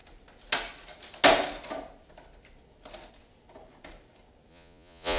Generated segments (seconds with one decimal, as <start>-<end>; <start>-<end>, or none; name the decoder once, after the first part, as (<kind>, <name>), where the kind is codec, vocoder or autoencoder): 4.5-5.2 (vocoder, Vocos)